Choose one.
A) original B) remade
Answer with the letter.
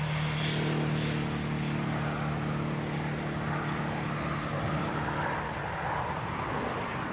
A